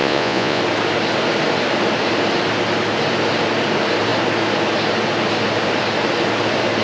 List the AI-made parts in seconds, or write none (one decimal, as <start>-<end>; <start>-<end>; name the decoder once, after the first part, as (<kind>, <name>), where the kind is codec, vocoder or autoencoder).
0.0-0.6 (vocoder, Vocos)